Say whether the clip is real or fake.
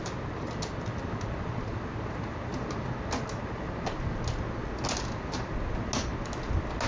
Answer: real